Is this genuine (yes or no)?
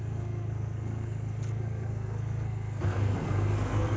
no